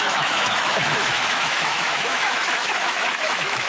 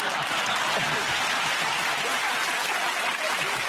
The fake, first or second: first